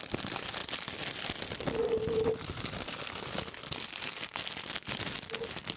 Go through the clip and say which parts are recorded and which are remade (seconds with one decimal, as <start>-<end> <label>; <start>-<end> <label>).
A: 0.0-5.8 recorded